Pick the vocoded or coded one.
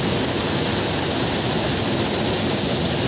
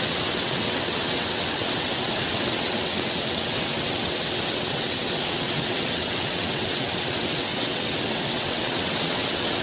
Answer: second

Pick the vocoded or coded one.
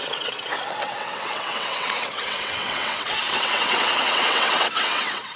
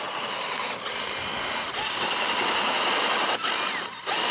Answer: first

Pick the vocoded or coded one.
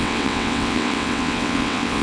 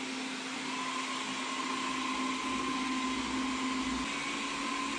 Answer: first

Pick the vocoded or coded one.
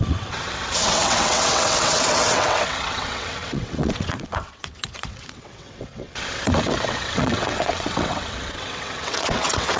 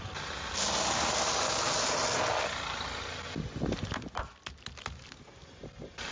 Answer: first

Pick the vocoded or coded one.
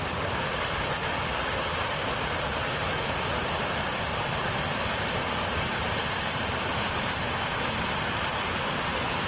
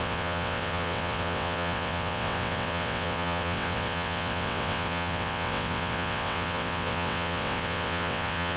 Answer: second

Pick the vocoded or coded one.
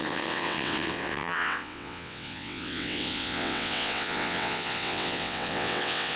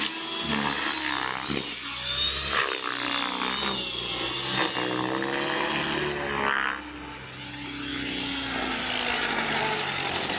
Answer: first